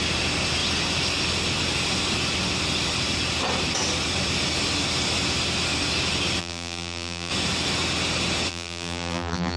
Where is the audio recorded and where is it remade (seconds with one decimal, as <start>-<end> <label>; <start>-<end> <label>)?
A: 0.0-6.4 recorded; 6.4-7.3 remade; 7.3-8.5 recorded; 8.5-9.6 remade